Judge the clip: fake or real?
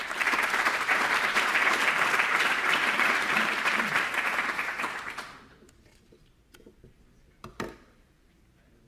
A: fake